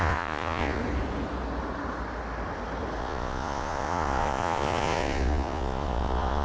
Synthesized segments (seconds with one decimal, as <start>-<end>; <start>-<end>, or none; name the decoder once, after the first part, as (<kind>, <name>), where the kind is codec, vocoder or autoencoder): 0.0-0.8 (vocoder, Vocos); 3.0-6.4